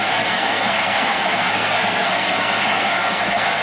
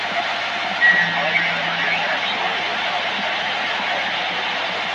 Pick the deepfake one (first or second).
first